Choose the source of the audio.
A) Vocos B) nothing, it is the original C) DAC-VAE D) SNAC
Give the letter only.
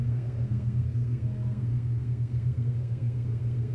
D